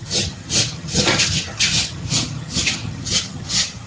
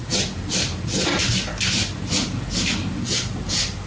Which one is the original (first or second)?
second